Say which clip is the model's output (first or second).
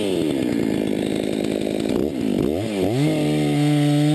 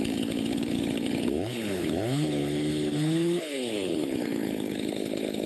second